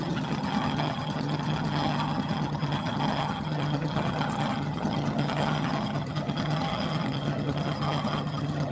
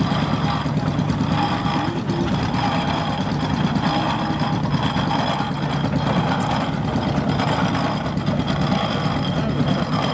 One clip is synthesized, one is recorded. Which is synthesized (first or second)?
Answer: first